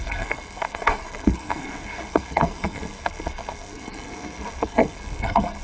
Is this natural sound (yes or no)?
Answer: no